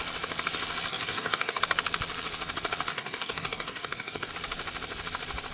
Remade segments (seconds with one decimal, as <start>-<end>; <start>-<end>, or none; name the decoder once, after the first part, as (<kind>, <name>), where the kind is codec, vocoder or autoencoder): 0.9-1.6 (codec, DAC); 2.9-4.3